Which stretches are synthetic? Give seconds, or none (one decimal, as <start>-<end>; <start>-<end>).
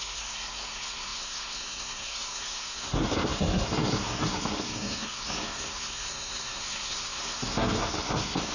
0.0-8.5